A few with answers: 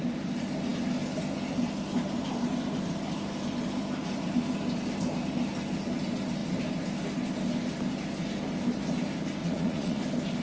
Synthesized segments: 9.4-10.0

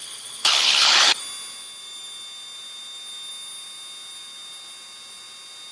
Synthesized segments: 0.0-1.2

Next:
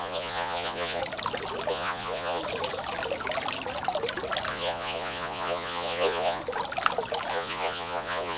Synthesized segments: 0.0-1.0; 1.7-2.4; 4.5-6.4; 7.3-8.4